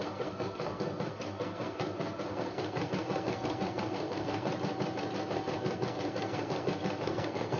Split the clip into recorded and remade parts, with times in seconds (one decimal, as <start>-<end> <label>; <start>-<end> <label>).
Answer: 0.0-4.5 remade; 4.5-5.2 recorded; 5.2-7.6 remade